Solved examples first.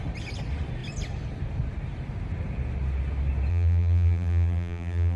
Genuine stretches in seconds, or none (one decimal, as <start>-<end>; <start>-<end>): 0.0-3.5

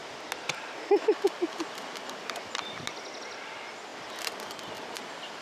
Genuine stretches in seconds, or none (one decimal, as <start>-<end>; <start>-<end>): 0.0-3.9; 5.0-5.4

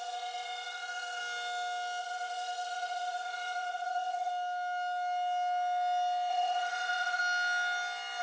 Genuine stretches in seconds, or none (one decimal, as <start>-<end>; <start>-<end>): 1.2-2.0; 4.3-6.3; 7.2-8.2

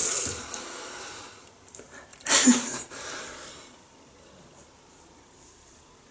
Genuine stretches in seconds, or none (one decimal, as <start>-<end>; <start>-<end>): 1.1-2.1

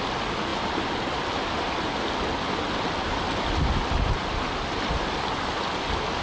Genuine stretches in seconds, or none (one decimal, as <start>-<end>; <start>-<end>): 0.0-6.2

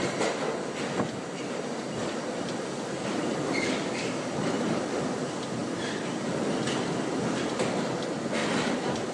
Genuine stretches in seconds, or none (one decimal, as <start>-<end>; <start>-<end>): 0.0-2.0; 3.2-5.6; 6.1-8.4

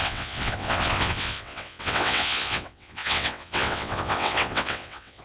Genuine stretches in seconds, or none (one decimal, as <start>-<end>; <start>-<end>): none